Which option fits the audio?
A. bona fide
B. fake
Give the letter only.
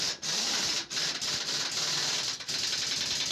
A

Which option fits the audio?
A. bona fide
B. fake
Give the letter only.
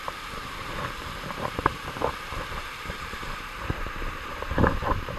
B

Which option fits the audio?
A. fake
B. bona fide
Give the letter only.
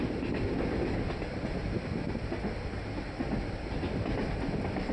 B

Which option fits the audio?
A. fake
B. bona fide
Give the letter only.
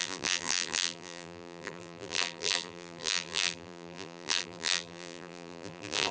A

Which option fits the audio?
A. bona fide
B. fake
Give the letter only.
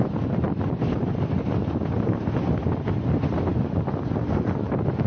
A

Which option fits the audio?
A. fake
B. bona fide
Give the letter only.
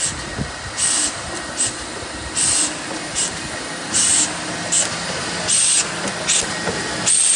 B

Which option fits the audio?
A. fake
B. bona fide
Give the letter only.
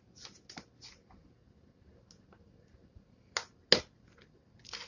B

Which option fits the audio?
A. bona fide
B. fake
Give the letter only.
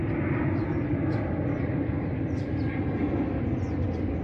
A